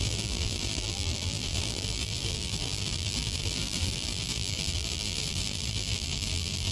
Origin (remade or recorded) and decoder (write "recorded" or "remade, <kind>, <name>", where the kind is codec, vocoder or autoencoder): remade, vocoder, BigVGAN v2